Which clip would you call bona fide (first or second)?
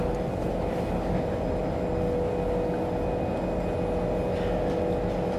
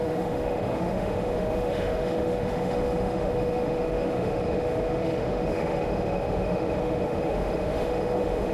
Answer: first